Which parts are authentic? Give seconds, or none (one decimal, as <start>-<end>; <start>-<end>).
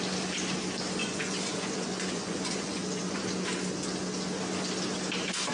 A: 0.0-1.0; 3.2-5.5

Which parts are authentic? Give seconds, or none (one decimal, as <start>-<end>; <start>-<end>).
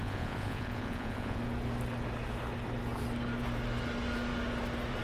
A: 1.4-5.0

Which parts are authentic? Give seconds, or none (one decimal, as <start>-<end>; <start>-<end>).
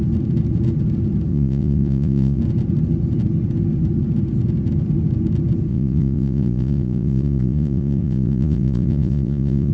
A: 0.0-1.3; 2.4-5.7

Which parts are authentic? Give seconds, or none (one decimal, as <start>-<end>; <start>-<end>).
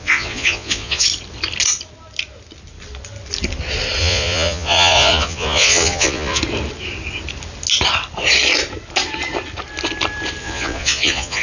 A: 1.1-4.0; 6.4-10.4